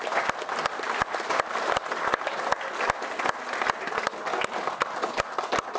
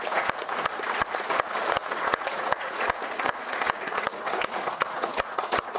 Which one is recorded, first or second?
first